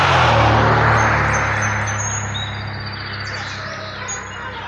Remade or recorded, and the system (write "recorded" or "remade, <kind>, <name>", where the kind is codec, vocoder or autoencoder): recorded